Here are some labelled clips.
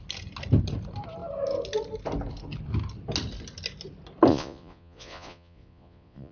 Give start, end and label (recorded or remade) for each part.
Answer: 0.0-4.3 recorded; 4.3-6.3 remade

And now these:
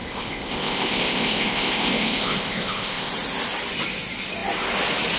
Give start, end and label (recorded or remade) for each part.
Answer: 0.0-3.1 remade; 3.1-5.2 recorded